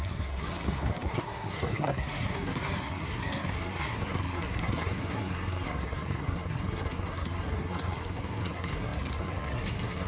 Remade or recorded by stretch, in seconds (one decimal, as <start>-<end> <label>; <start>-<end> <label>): 0.0-10.1 remade